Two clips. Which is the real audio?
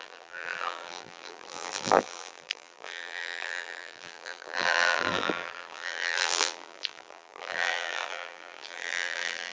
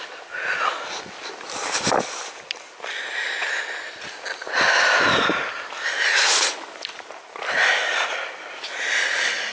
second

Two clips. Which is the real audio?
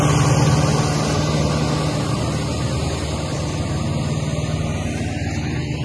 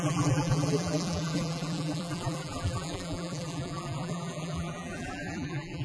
first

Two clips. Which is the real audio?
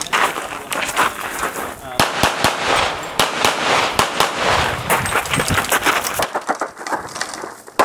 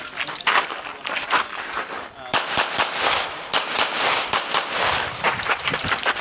first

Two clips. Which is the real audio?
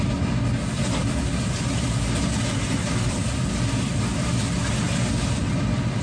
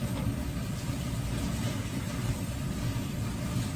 first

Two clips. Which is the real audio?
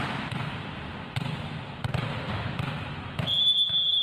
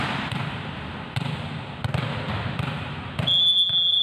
second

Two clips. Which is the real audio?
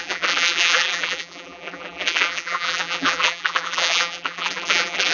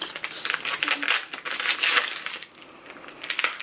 second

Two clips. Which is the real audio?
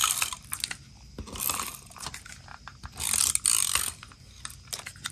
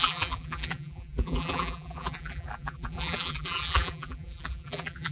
first